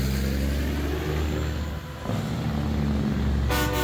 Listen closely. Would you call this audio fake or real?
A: real